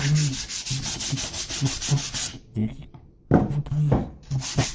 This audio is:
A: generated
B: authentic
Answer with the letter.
B